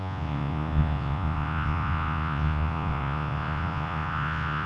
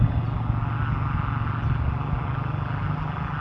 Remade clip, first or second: first